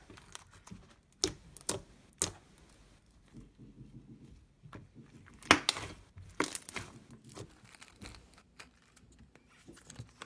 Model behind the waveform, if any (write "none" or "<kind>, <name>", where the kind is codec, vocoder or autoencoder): none